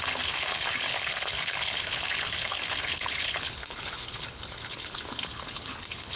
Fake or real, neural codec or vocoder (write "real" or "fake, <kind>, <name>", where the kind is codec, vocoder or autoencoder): fake, codec, HILCodec